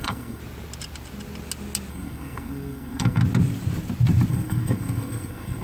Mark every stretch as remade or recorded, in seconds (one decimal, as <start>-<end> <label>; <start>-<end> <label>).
0.0-0.4 remade; 0.4-1.9 recorded; 1.9-3.2 remade; 3.2-4.3 recorded; 4.3-5.6 remade